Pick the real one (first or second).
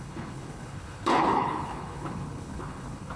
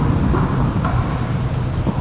second